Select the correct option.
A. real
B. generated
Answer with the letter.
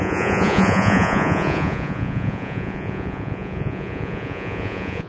B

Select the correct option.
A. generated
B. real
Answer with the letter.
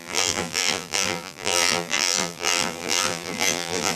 A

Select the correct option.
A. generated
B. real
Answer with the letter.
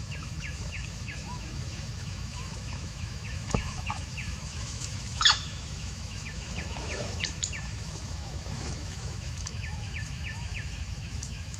A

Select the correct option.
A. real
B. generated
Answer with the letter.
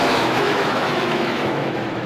B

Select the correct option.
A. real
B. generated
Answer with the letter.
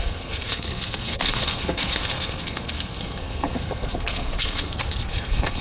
B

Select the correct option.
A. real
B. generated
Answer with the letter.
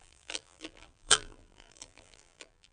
B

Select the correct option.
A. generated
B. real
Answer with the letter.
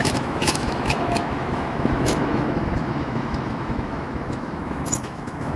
A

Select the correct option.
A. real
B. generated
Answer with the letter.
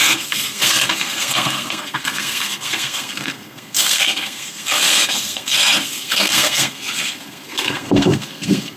B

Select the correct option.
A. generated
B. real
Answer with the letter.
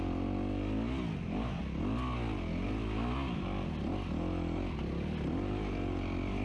B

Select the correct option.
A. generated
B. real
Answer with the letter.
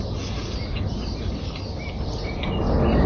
B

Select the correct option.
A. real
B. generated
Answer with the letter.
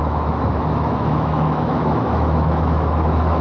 B